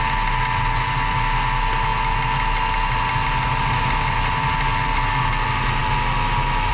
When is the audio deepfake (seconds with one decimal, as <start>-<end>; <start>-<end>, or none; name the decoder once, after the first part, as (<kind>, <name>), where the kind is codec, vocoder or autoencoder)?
none